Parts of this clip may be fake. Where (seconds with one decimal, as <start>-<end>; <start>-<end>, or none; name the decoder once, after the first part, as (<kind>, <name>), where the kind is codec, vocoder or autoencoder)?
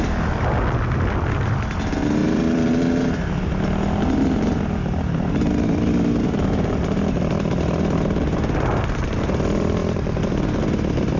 2.2-2.8 (vocoder, BigVGAN v2); 9.8-10.6